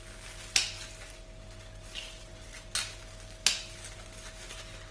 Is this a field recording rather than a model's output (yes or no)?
yes